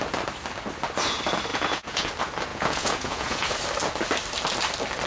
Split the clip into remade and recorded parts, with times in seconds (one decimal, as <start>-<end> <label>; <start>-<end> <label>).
0.0-1.5 recorded; 1.5-2.1 remade; 2.1-2.5 recorded; 2.5-3.5 remade; 3.5-5.1 recorded